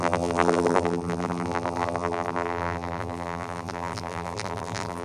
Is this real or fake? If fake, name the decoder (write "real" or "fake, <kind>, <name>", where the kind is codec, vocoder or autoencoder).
fake, vocoder, BigVGAN v2